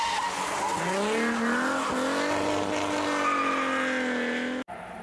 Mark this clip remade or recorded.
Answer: recorded